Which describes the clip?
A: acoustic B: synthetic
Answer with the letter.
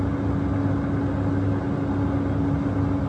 A